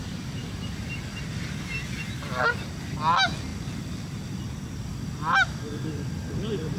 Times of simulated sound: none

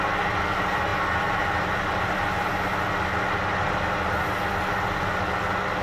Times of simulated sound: none

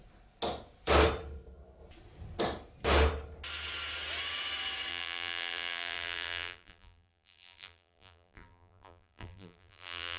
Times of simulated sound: 4.9-10.2 (vocoder, BigVGAN v2)

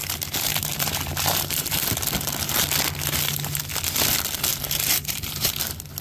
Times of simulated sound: 0.0-1.8 (vocoder, BigVGAN v2); 4.5-5.6

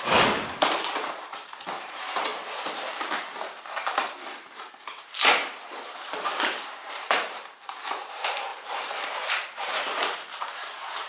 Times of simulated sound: 0.0-2.3 (vocoder, BigVGAN v2); 4.7-5.4; 6.8-11.1

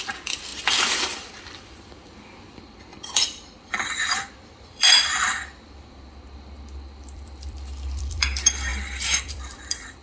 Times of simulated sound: 0.0-10.0 (vocoder, BigVGAN v2)